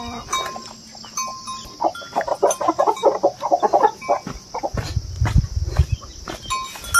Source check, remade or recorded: recorded